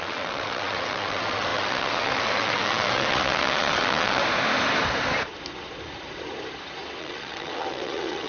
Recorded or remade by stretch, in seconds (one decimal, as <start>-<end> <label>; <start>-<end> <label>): 0.0-4.2 remade; 4.2-7.0 recorded; 7.0-8.3 remade

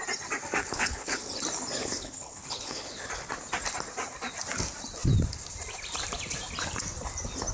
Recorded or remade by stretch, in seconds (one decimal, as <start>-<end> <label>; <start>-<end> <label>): 0.0-0.6 recorded; 0.6-1.2 remade; 1.2-1.8 recorded; 1.8-3.1 remade; 3.1-7.5 recorded